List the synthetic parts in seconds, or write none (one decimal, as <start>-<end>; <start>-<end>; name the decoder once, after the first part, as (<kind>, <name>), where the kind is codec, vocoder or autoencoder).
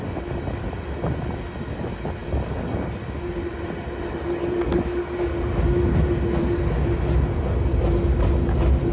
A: none